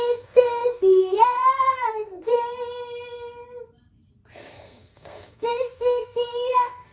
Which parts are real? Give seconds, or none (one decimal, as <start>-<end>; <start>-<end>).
2.3-4.3